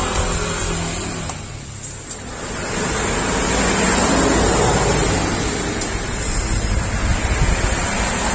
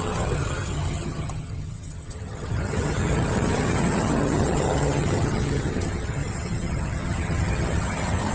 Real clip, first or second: first